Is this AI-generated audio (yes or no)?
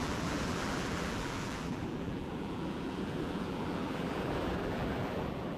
yes